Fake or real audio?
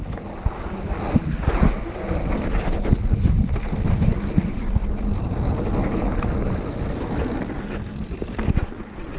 real